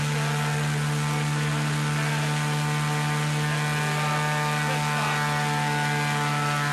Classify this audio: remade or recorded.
recorded